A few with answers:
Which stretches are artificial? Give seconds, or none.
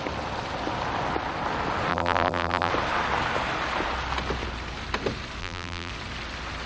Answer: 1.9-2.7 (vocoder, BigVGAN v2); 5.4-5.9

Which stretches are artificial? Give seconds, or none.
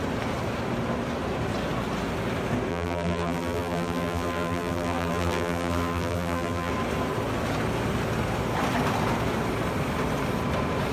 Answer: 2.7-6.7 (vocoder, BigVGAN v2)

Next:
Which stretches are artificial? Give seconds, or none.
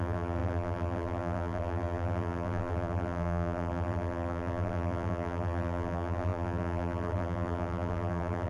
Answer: 0.0-8.5 (vocoder, BigVGAN v2)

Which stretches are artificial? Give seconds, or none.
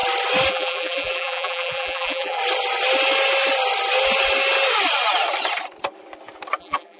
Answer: 0.5-2.4 (vocoder, BigVGAN v2); 6.6-7.0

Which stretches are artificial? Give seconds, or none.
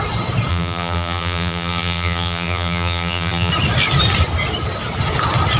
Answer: 0.5-3.5 (vocoder, BigVGAN v2)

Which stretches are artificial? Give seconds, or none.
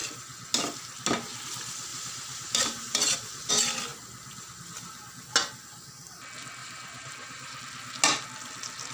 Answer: 1.9-3.5 (vocoder, BigVGAN v2); 6.6-7.6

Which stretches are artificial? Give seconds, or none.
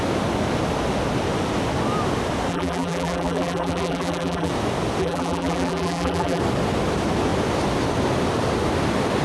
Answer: 2.5-4.5 (vocoder, BigVGAN v2); 5.0-6.4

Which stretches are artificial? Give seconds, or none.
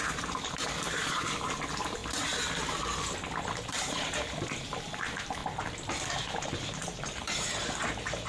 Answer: 0.0-2.0 (vocoder, BigVGAN v2); 3.4-5.4; 6.2-8.3